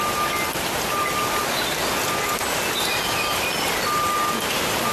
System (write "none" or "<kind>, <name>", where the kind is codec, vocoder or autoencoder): none